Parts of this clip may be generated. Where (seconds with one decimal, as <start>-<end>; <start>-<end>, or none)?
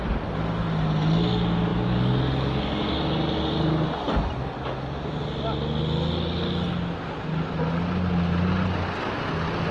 none